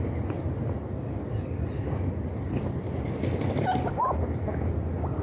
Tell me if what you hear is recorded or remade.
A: remade